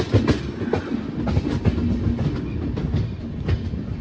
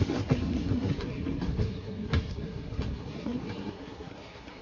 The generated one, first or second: second